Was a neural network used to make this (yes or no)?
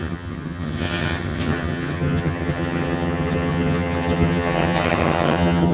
yes